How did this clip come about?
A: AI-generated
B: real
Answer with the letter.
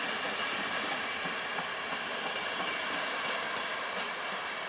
B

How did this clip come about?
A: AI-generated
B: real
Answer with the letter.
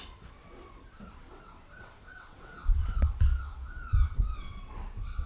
A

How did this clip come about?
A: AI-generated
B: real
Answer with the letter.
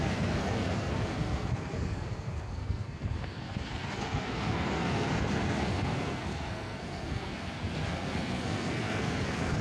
A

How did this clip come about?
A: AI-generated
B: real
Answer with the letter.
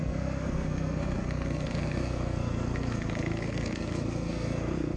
A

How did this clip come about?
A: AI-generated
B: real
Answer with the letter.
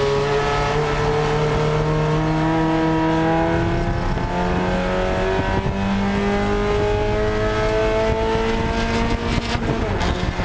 B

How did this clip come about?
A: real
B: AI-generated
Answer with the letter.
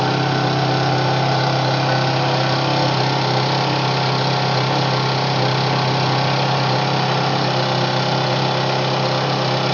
A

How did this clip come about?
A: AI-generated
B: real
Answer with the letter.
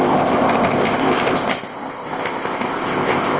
A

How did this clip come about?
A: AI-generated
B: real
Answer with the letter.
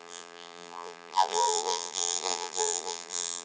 A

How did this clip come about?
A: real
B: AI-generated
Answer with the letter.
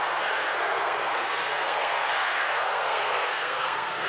B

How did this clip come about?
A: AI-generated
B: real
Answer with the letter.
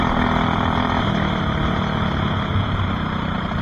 B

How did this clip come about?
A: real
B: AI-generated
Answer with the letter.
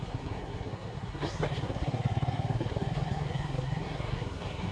B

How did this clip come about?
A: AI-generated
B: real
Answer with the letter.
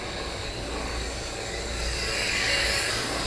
A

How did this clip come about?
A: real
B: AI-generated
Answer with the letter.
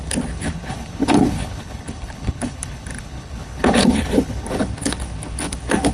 B